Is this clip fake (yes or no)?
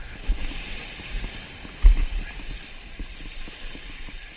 no